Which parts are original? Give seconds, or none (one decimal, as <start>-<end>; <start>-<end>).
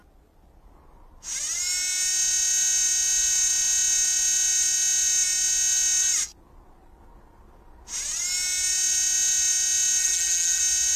0.0-10.0; 10.6-11.0